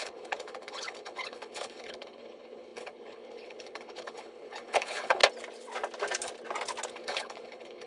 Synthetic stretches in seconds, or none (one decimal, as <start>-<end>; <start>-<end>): 0.0-5.2; 6.9-7.9